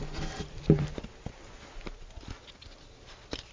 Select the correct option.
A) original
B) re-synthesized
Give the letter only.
A